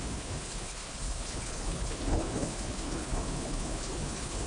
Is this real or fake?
fake